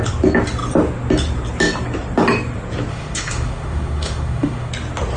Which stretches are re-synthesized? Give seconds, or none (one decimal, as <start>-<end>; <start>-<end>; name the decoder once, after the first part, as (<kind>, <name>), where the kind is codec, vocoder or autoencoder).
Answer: 2.9-4.7 (autoencoder, DAC-VAE)